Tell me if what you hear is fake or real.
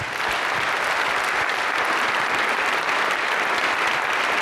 real